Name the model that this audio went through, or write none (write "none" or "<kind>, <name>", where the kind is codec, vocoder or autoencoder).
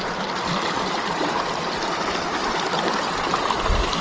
none